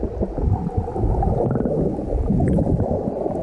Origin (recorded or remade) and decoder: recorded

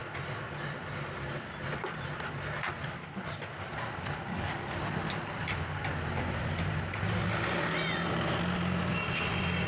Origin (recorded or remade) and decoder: recorded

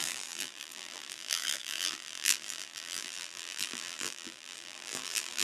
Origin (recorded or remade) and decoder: remade, vocoder, BigVGAN v2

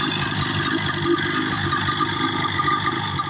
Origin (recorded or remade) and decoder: recorded